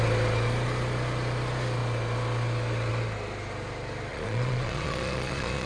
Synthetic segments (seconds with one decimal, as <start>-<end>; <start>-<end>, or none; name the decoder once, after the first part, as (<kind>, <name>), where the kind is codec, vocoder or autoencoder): 4.1-5.7 (vocoder, Vocos)